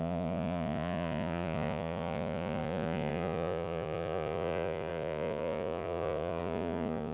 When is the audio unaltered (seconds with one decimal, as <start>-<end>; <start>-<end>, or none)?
none